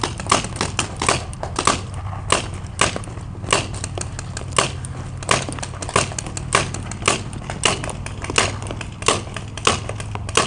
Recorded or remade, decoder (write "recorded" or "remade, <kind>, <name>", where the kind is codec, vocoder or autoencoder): recorded